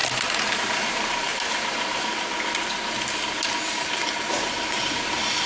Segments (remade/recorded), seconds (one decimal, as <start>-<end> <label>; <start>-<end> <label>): 0.0-0.7 recorded; 0.7-1.3 remade; 1.3-3.9 recorded; 3.9-5.5 remade